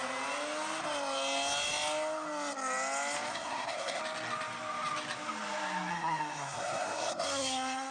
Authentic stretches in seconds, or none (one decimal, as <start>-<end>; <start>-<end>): 0.0-3.3; 4.0-5.9